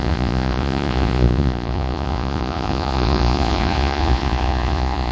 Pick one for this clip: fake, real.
fake